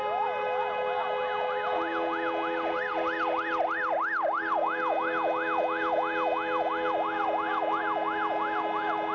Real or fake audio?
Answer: real